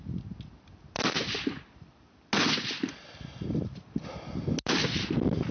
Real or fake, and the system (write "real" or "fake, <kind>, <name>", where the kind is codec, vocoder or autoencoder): real